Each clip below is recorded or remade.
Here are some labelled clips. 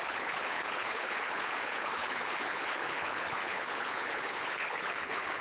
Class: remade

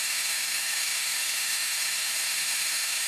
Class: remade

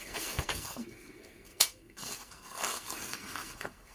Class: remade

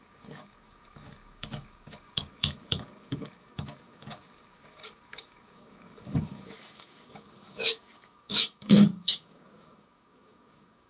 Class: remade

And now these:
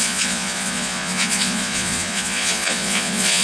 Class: remade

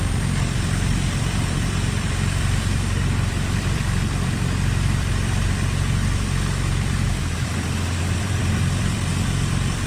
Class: remade